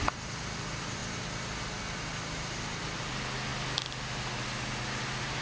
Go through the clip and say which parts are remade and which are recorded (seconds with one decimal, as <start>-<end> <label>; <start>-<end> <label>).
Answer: 0.0-5.4 recorded